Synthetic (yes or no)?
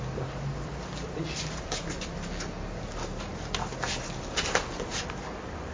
no